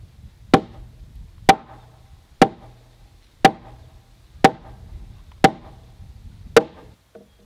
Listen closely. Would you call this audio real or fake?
real